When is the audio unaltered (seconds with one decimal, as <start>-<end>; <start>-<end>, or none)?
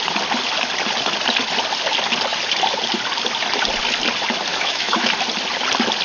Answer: 0.0-4.5; 5.1-6.0